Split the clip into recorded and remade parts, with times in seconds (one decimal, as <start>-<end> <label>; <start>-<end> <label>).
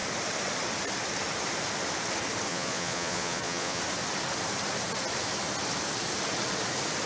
0.0-2.5 recorded; 2.5-3.8 remade; 3.8-7.1 recorded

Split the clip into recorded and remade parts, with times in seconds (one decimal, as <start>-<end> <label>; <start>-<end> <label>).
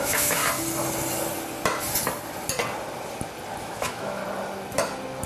0.0-0.4 remade; 0.4-3.6 recorded; 3.6-4.2 remade; 4.2-5.3 recorded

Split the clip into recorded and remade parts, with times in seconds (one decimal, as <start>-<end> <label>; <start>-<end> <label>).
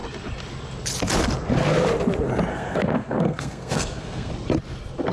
0.0-2.5 recorded; 2.5-4.3 remade; 4.3-5.1 recorded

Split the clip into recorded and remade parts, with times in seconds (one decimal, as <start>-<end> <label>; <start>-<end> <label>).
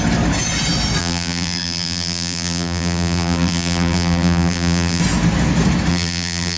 0.0-1.0 recorded; 1.0-5.0 remade; 5.0-5.9 recorded; 5.9-6.6 remade